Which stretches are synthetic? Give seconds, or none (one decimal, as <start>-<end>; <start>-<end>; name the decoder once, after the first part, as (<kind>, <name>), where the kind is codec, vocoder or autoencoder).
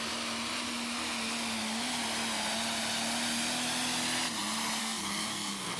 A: 4.8-5.8 (codec, SNAC)